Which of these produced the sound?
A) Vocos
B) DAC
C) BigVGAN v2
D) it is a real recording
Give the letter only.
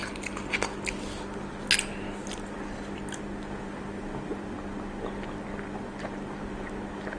D